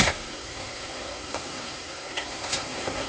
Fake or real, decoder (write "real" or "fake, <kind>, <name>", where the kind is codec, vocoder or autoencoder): fake, codec, SNAC